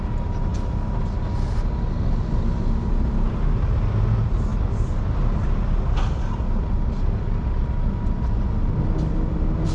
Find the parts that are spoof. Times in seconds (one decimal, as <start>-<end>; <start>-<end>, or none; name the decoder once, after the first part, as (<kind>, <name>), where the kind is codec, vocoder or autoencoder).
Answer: none